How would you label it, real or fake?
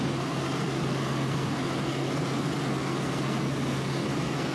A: fake